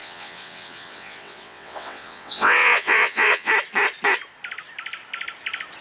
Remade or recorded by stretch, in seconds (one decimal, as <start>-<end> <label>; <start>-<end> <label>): 0.0-3.5 remade; 3.5-5.8 recorded